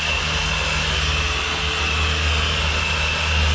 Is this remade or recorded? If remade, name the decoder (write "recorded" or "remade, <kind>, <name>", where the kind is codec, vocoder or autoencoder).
recorded